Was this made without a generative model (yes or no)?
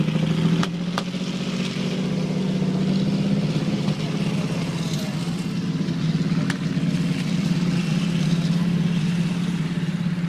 yes